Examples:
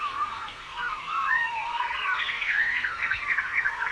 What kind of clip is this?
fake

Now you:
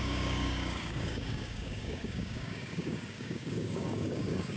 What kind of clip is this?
fake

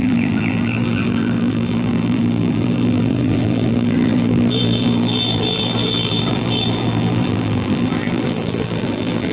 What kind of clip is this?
fake